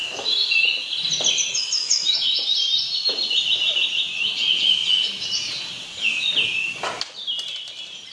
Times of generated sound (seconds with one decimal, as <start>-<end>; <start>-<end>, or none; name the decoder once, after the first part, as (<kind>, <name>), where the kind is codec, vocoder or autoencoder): 0.0-0.5 (autoencoder, DAC-VAE); 1.5-2.4